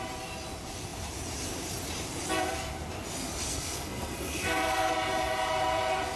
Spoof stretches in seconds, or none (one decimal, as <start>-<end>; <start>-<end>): 3.5-4.9

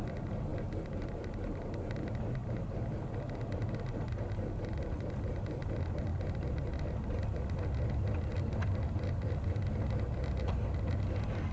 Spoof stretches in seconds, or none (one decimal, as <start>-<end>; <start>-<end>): none

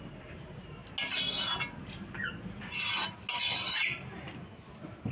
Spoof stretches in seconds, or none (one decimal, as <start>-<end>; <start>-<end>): none